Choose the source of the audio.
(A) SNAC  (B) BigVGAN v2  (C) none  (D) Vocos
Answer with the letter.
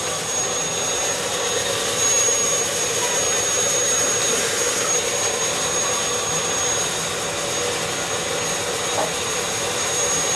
C